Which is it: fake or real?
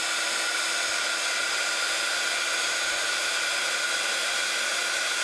real